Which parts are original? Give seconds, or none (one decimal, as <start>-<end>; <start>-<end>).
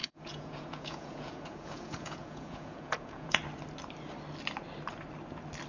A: 3.4-5.7